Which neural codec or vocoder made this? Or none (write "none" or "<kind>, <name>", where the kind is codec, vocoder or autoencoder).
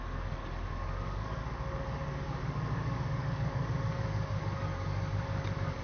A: codec, DAC